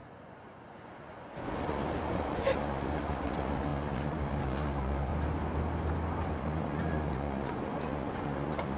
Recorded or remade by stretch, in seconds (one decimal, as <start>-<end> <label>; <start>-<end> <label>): 0.0-5.1 remade; 5.1-6.3 recorded; 6.3-8.8 remade